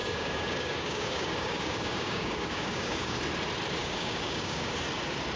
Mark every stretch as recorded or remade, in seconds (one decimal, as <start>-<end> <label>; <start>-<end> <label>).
0.0-3.2 remade; 3.2-3.8 recorded; 3.8-4.7 remade; 4.7-5.4 recorded